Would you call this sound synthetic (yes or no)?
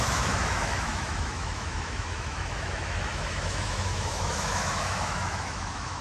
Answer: yes